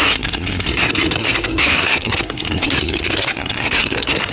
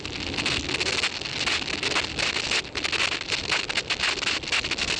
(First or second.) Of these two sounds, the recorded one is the second